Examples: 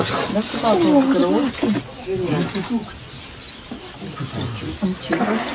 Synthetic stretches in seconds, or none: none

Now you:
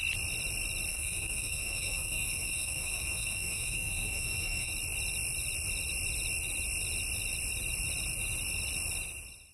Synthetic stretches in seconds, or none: 0.9-4.7 (codec, SNAC)

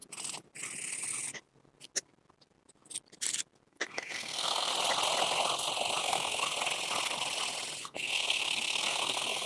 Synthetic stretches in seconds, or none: 3.7-4.7 (codec, SNAC); 6.0-6.5; 7.8-9.5